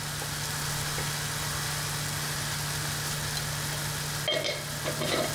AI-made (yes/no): no